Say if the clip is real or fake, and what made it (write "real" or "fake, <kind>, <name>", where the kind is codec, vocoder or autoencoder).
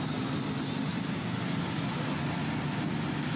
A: real